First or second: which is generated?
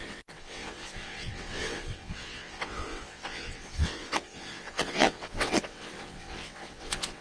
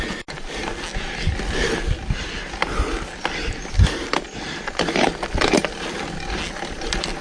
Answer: first